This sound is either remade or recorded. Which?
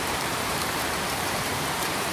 remade